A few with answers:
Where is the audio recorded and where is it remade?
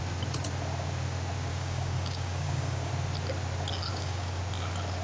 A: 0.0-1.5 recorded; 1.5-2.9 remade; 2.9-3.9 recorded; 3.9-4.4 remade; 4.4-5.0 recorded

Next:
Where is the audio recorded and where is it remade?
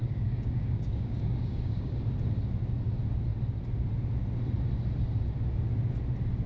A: 0.0-1.9 remade; 1.9-6.5 recorded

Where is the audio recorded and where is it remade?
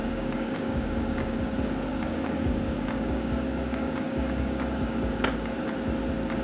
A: 0.0-1.5 remade; 1.5-1.9 recorded; 1.9-5.7 remade; 5.7-6.4 recorded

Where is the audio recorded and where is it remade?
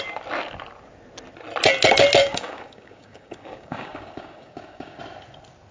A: 0.0-2.2 recorded; 2.2-5.0 remade; 5.0-5.7 recorded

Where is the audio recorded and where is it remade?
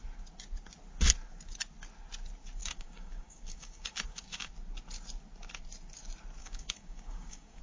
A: 0.0-2.6 recorded; 2.6-4.5 remade; 4.5-6.4 recorded; 6.4-7.6 remade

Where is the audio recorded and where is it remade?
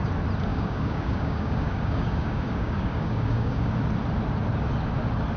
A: 0.0-0.5 recorded; 0.5-3.7 remade; 3.7-5.4 recorded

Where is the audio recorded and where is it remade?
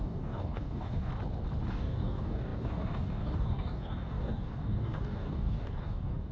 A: 0.0-1.1 remade; 1.1-1.7 recorded; 1.7-6.3 remade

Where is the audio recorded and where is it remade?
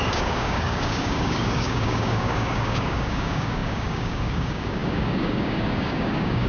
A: 0.0-6.5 remade